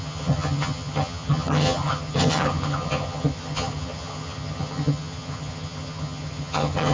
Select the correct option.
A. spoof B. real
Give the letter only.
A